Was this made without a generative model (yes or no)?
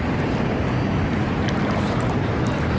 yes